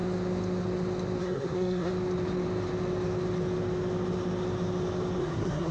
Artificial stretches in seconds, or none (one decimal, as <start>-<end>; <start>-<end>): 1.2-1.9; 5.2-5.7